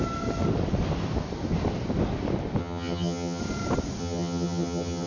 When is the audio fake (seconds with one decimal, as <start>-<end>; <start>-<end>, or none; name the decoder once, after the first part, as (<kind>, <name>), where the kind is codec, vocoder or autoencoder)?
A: 2.6-3.4 (vocoder, HiFi-GAN); 4.0-5.1